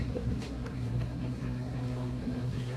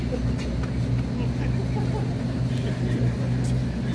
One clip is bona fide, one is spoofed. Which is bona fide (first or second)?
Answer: second